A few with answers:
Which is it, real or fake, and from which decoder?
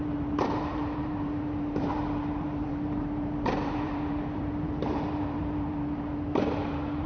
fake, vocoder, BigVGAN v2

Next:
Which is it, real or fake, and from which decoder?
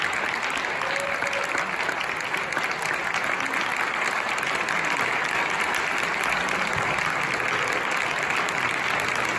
real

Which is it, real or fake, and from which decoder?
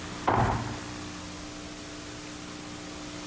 real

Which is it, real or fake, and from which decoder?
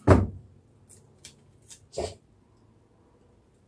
real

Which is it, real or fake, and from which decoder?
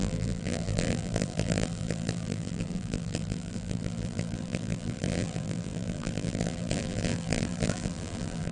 fake, vocoder, BigVGAN v2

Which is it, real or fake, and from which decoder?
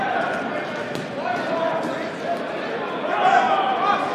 real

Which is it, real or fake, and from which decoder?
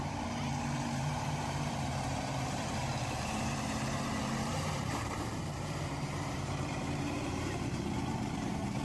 fake, vocoder, BigVGAN v2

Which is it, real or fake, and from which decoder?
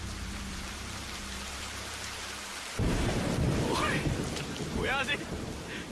fake, vocoder, BigVGAN v2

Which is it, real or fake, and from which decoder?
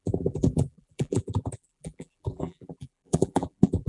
fake, vocoder, BigVGAN v2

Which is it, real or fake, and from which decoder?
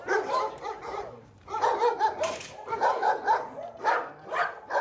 fake, vocoder, BigVGAN v2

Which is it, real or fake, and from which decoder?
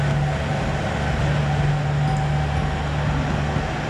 real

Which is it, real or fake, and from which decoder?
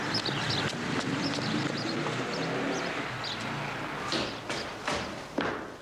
real